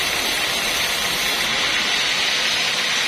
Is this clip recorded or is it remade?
recorded